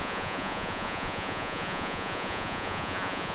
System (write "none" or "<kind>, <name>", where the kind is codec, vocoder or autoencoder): vocoder, Vocos